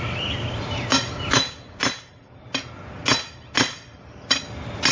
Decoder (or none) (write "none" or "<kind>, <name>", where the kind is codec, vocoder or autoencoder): none